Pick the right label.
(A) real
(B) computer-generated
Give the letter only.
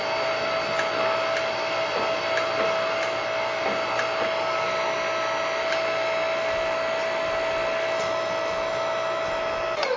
A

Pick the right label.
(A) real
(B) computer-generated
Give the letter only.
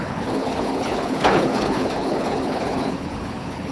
B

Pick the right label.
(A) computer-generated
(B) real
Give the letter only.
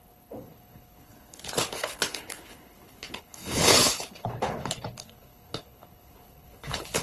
A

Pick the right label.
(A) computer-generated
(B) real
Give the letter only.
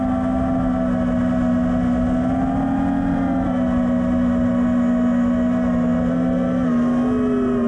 B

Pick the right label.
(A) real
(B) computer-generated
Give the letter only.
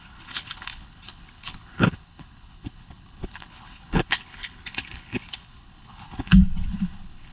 B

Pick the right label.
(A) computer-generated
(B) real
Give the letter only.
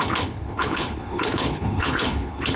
A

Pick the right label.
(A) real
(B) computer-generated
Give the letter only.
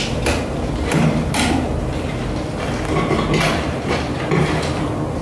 A